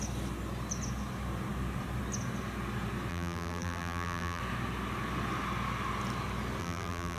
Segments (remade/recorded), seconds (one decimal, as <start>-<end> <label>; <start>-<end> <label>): 0.0-3.1 recorded; 3.1-4.4 remade; 4.4-6.6 recorded; 6.6-7.2 remade